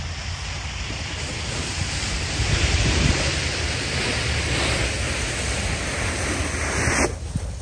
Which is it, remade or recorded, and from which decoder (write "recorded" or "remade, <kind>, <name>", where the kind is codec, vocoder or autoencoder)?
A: recorded